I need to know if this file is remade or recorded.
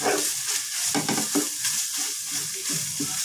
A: recorded